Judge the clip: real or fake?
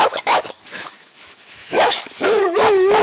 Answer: fake